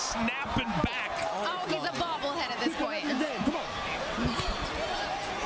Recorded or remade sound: recorded